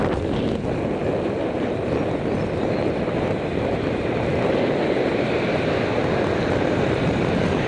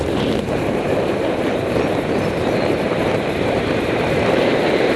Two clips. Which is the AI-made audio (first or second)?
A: second